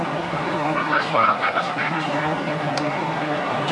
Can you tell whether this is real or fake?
fake